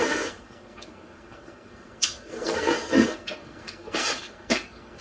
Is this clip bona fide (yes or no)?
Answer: no